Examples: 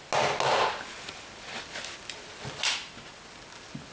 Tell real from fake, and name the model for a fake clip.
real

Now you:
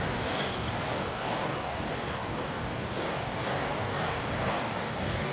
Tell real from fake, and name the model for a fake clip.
fake, codec, DAC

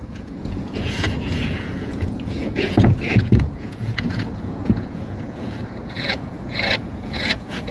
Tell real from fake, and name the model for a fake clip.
fake, vocoder, Vocos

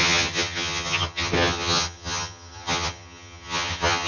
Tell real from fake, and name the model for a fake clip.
fake, vocoder, HiFi-GAN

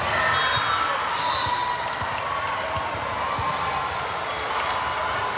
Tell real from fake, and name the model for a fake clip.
real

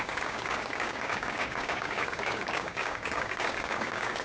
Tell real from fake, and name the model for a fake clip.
fake, codec, DAC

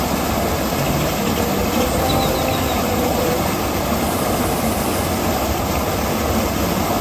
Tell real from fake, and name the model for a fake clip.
real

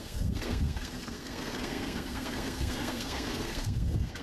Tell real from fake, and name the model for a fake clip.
fake, codec, SNAC